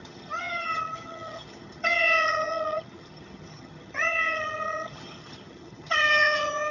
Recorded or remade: remade